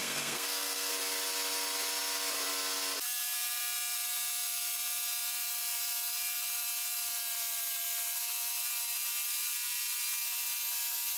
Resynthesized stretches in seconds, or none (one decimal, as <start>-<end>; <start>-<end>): 0.0-0.9